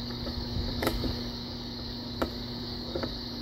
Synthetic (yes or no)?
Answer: yes